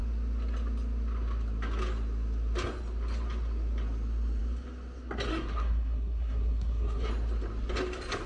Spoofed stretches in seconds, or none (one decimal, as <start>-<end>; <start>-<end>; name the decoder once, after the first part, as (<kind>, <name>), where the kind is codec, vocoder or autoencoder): 5.3-7.1 (codec, SNAC)